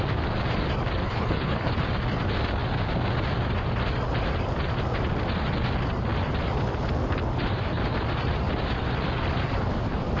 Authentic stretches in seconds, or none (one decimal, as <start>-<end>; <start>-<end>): 0.0-1.0; 1.7-10.2